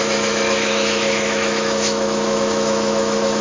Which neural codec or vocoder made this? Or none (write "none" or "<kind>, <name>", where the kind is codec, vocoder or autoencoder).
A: autoencoder, DAC-VAE